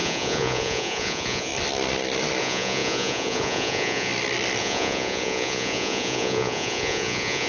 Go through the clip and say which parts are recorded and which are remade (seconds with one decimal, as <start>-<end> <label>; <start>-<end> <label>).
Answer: 0.0-1.5 remade; 1.5-2.4 recorded; 2.4-4.1 remade; 4.1-4.6 recorded; 4.6-7.5 remade